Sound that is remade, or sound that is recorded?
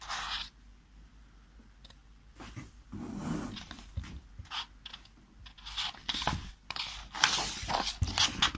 recorded